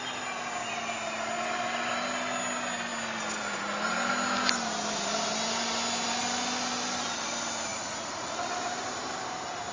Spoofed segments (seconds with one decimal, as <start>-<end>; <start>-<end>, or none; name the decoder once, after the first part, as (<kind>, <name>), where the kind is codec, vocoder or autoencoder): 7.7-8.3 (vocoder, Vocos)